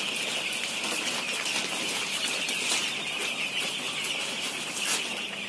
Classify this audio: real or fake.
real